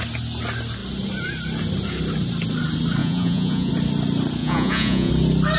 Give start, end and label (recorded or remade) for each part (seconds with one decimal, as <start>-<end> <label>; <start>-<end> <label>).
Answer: 0.0-3.0 recorded; 3.0-3.7 remade; 3.7-4.4 recorded; 4.4-5.1 remade; 5.1-5.6 recorded